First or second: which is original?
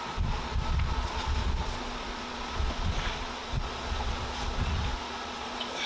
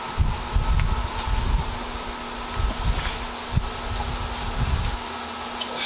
second